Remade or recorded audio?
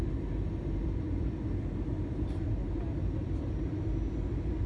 recorded